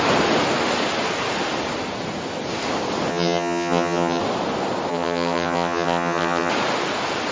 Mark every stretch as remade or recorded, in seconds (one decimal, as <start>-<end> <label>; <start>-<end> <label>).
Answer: 0.0-3.1 recorded; 3.1-4.2 remade; 4.2-4.9 recorded; 4.9-6.5 remade; 6.5-7.3 recorded

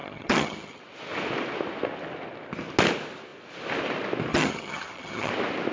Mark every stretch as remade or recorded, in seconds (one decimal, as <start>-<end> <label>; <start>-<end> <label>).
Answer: 0.0-0.8 remade; 0.8-4.3 recorded; 4.3-5.3 remade; 5.3-5.7 recorded

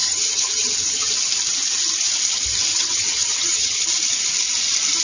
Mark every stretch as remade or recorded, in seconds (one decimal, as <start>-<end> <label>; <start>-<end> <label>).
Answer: 0.0-1.1 remade; 1.1-2.7 recorded; 2.7-3.8 remade; 3.8-5.0 recorded

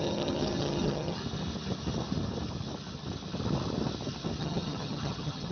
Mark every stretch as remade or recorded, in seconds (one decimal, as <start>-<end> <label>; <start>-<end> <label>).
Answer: 0.0-1.2 remade; 1.2-4.4 recorded; 4.4-5.5 remade

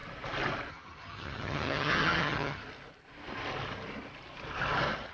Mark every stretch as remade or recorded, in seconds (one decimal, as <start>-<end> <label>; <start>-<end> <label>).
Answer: 0.0-0.7 recorded; 0.7-2.6 remade; 2.6-5.1 recorded